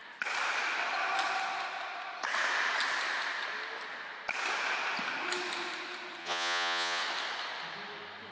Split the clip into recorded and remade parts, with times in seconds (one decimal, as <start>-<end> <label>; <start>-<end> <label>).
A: 0.0-6.2 recorded; 6.2-7.0 remade; 7.0-8.3 recorded